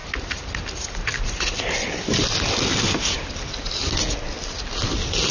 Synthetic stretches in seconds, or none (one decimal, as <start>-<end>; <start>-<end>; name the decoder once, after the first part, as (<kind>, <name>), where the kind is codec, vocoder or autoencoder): none